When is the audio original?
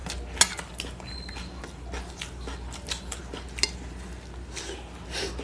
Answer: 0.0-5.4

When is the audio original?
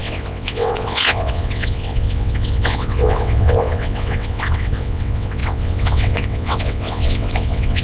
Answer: none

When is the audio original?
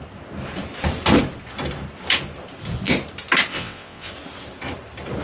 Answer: 0.0-3.5; 4.1-5.2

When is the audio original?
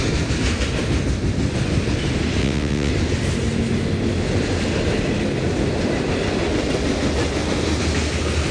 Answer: 0.0-2.4; 2.9-8.5